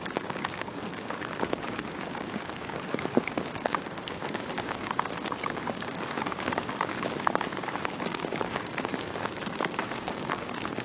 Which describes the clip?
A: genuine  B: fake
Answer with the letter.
B